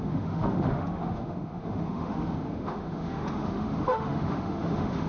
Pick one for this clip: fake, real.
fake